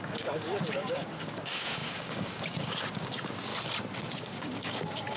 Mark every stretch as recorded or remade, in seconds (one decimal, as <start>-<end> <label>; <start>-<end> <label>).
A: 0.0-3.5 remade; 3.5-4.1 recorded; 4.1-5.2 remade